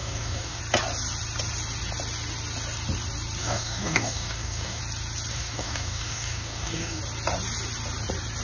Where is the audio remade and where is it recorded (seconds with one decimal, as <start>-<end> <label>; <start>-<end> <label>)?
0.0-0.6 remade; 0.6-3.4 recorded; 3.4-4.8 remade; 4.8-5.3 recorded; 5.3-7.0 remade; 7.0-8.4 recorded